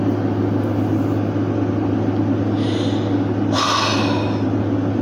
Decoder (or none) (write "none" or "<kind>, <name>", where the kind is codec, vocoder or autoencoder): none